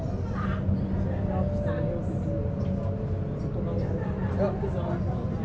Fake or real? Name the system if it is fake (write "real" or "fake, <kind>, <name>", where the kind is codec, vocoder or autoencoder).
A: real